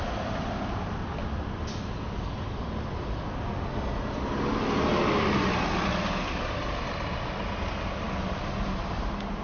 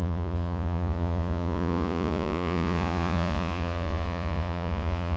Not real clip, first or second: second